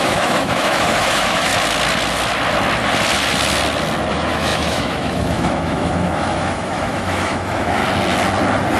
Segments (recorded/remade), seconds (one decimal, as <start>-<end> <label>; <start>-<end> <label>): 0.0-1.5 remade; 1.5-4.1 recorded; 4.1-7.8 remade; 7.8-8.8 recorded